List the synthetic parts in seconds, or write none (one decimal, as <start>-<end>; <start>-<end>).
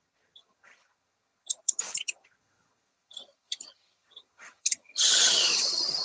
0.0-6.0